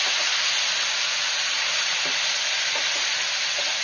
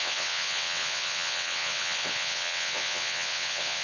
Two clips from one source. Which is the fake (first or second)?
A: second